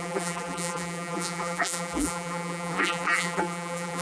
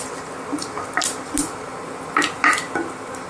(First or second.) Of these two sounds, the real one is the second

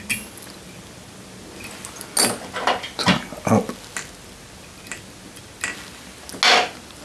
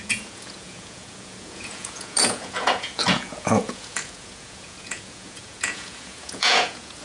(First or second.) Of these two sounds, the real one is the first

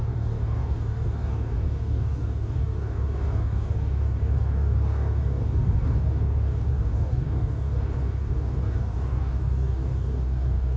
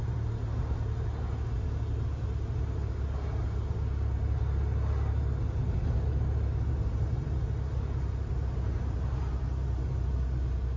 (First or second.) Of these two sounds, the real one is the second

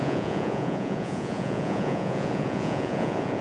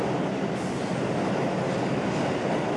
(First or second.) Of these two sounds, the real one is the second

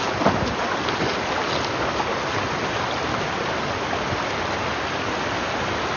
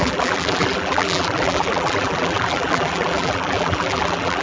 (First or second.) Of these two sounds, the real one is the first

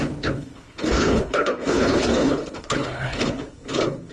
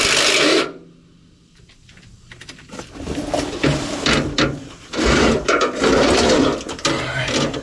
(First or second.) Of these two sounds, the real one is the second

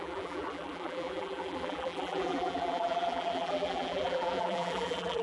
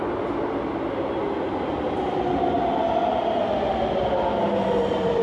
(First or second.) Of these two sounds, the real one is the second